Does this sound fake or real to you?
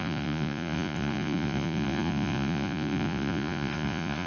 fake